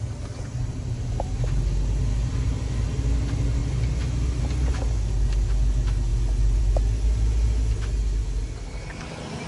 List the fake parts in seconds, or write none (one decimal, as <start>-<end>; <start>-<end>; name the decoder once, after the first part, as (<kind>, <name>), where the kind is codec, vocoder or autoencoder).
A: none